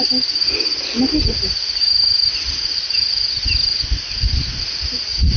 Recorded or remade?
recorded